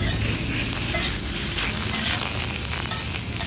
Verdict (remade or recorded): recorded